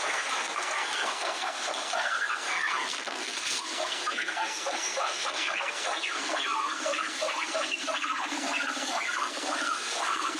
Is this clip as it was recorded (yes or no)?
no